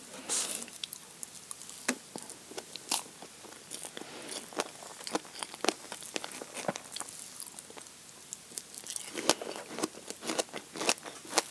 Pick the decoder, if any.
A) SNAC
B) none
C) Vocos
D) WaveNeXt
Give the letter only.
B